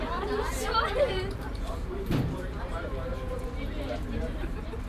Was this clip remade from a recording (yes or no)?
yes